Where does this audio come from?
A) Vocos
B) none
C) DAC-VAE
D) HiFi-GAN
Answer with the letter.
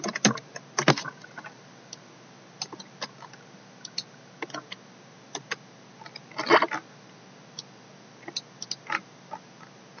B